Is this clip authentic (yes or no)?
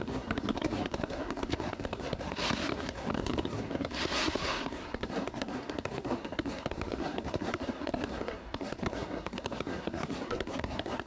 no